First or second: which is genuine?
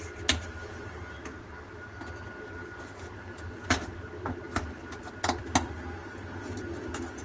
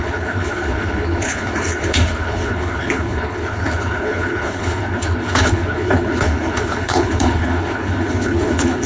first